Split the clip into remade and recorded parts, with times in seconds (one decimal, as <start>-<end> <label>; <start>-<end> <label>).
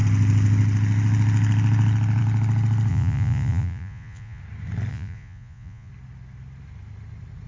0.0-2.9 recorded; 2.9-4.4 remade; 4.4-4.9 recorded; 4.9-5.9 remade; 5.9-7.5 recorded